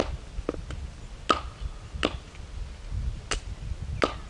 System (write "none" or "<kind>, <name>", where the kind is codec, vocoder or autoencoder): none